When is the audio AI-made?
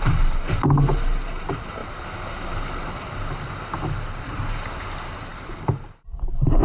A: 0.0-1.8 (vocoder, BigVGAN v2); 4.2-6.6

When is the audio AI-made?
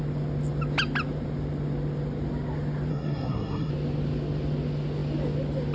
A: 2.9-3.7 (codec, SNAC)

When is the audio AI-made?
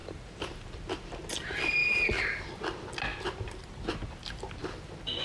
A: 0.0-0.8 (vocoder, BigVGAN v2); 1.8-2.4; 3.1-4.1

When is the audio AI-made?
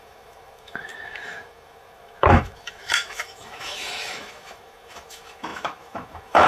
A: 0.0-6.5 (autoencoder, DAC-VAE)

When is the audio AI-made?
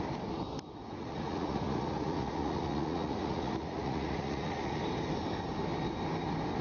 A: 0.8-4.8 (vocoder, Vocos)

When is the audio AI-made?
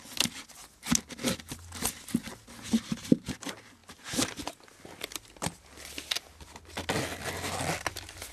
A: none